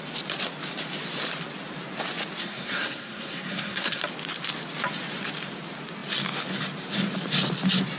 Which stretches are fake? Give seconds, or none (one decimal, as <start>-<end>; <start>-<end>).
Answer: 2.4-4.0